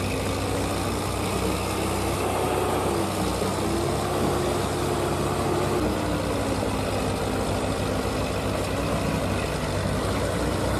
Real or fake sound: real